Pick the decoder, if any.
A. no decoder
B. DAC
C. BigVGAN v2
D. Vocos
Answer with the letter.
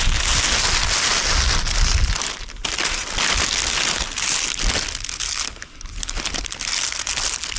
A